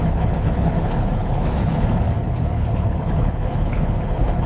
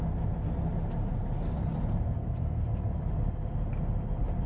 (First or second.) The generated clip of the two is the first